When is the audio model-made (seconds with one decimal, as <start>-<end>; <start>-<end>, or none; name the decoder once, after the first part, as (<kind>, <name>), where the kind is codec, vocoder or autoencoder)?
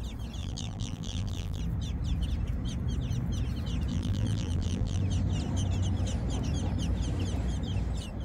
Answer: 0.4-1.6 (vocoder, BigVGAN v2); 3.9-5.0